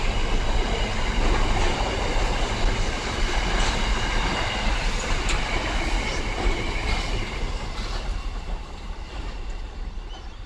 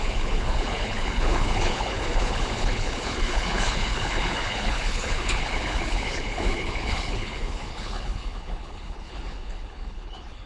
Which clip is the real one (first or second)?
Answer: first